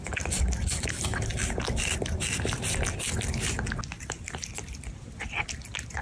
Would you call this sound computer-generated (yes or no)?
no